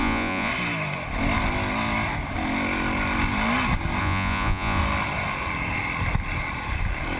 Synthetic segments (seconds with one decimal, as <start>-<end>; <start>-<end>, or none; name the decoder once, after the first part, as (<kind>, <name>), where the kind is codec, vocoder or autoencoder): 0.0-0.5 (vocoder, Vocos); 4.0-4.8